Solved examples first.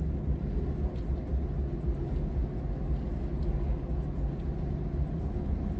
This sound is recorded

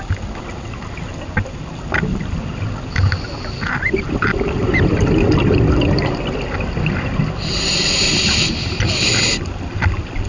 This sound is recorded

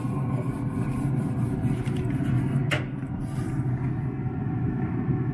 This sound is recorded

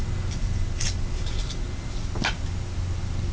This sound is recorded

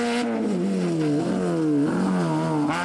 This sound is recorded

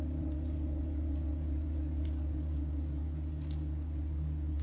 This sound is recorded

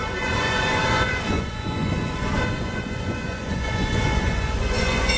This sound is remade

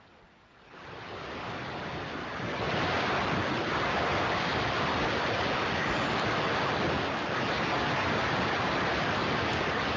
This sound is recorded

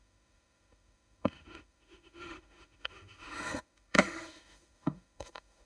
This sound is remade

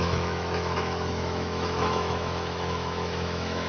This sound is remade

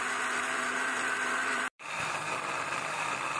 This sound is remade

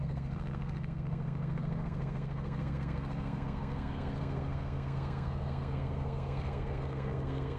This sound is remade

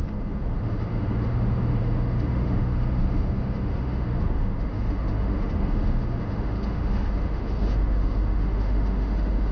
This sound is remade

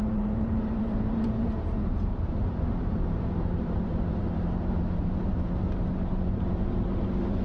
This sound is remade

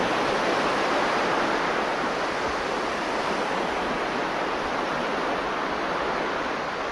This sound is recorded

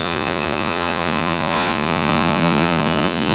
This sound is remade